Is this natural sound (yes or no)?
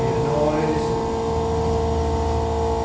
yes